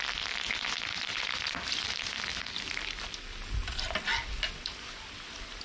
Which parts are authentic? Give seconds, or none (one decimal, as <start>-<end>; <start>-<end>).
0.0-5.6